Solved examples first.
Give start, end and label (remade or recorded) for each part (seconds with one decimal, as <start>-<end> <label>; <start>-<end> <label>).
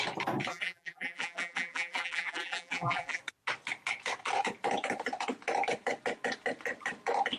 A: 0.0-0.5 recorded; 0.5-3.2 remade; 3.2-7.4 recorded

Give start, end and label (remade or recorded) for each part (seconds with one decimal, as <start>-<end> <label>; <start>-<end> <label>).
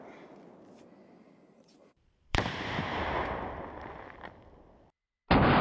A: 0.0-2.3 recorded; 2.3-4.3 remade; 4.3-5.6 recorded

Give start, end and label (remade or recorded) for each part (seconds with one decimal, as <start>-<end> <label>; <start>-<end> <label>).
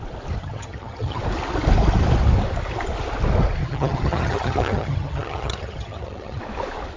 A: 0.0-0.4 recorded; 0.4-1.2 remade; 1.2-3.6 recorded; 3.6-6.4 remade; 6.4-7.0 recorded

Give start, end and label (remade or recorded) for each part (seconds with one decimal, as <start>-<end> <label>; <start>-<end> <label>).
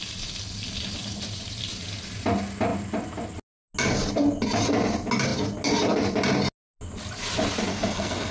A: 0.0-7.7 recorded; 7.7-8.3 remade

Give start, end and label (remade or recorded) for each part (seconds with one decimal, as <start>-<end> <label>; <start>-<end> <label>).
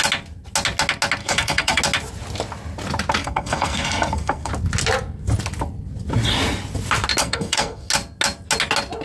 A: 0.0-1.2 recorded; 1.2-1.8 remade; 1.8-3.2 recorded; 3.2-4.5 remade; 4.5-7.2 recorded; 7.2-7.9 remade; 7.9-9.0 recorded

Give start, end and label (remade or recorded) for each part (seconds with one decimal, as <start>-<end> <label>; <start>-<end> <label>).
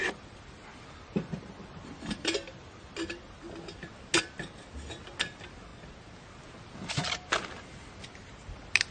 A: 0.0-3.2 remade; 3.2-8.9 recorded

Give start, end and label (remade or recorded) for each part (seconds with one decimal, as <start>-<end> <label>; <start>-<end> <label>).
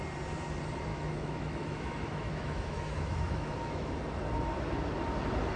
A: 0.0-0.9 recorded; 0.9-3.9 remade; 3.9-5.6 recorded